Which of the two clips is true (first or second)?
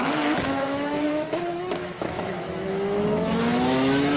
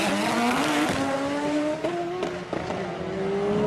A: second